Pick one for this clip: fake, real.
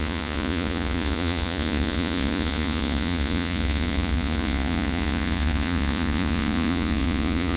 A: fake